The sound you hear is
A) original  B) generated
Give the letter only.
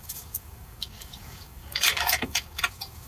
B